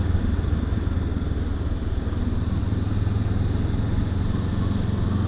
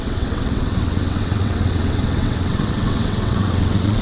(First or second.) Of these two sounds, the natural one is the first